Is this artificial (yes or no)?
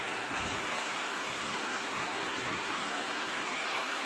yes